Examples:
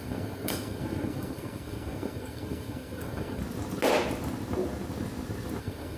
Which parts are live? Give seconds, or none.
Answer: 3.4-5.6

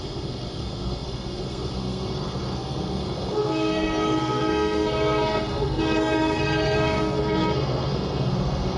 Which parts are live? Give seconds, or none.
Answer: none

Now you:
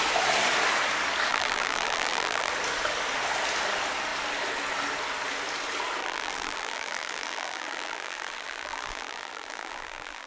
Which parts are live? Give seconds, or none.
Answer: 0.0-1.3; 2.5-6.0